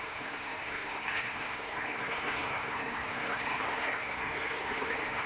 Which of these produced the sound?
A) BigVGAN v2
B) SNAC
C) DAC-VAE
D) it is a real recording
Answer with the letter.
B